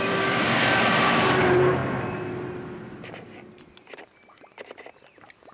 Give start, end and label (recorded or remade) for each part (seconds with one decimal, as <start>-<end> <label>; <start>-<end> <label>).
0.0-1.8 remade; 1.8-4.5 recorded; 4.5-5.5 remade